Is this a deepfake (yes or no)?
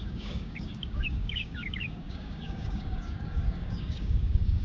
yes